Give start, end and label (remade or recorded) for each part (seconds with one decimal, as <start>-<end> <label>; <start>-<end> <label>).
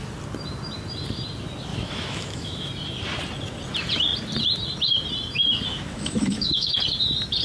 0.0-1.7 recorded; 1.7-2.7 remade; 2.7-5.7 recorded; 5.7-6.8 remade; 6.8-7.4 recorded